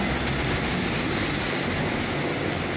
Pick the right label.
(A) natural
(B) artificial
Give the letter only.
A